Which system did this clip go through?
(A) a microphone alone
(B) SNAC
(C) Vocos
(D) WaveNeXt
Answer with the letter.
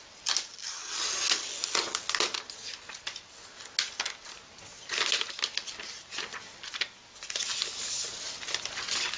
A